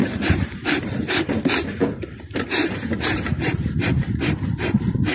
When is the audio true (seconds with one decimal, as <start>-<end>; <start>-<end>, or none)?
1.4-1.8; 3.9-5.1